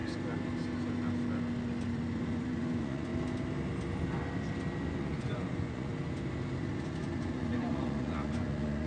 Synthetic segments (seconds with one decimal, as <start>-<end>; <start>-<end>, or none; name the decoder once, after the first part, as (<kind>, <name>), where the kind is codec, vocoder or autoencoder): 1.9-3.1 (vocoder, Vocos); 4.9-5.9; 6.8-8.9